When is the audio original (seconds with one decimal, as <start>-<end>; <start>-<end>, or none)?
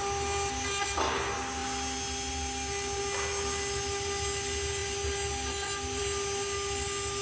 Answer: 0.0-7.2